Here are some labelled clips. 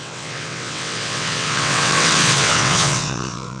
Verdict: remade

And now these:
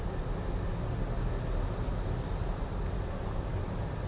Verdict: recorded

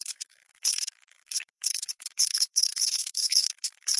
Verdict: remade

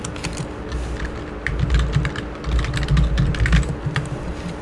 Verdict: recorded